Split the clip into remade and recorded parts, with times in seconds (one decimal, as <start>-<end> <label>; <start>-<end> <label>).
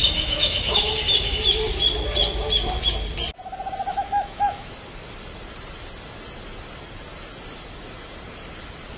0.0-0.9 remade; 0.9-3.9 recorded; 3.9-4.7 remade; 4.7-9.0 recorded